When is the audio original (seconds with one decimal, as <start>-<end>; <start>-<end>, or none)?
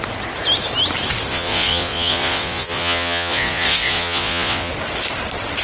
0.0-1.3; 4.7-5.6